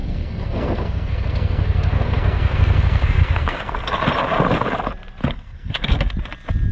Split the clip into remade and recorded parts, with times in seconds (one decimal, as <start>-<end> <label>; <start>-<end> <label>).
0.0-4.0 remade; 4.0-5.2 recorded; 5.2-6.1 remade; 6.1-6.7 recorded